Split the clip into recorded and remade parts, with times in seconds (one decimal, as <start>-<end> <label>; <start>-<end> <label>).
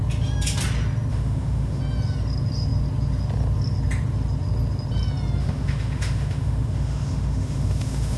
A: 0.0-1.1 recorded; 1.1-1.8 remade; 1.8-5.4 recorded; 5.4-8.2 remade